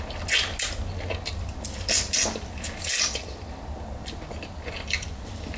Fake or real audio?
real